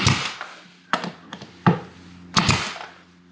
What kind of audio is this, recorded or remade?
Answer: recorded